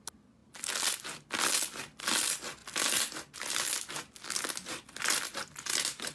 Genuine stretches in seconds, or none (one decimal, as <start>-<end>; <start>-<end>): 0.0-6.1